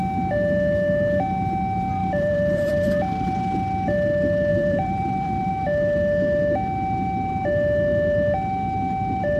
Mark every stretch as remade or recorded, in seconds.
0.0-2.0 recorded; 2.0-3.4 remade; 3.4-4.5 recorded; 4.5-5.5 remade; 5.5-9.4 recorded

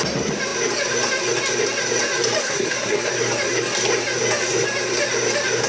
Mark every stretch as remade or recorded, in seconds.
0.0-2.4 recorded; 2.4-3.1 remade; 3.1-5.7 recorded

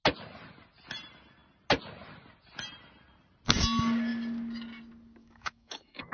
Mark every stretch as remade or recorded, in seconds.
0.0-5.2 recorded; 5.2-6.1 remade

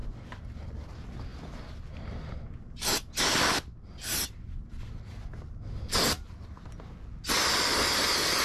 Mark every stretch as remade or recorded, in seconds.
0.0-8.4 recorded